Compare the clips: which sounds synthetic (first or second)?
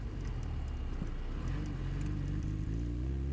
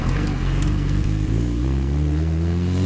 second